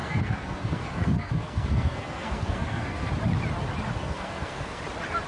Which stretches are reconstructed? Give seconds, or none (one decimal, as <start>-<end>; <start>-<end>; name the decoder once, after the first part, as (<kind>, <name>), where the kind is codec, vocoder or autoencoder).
0.0-3.1 (codec, SNAC); 4.0-4.8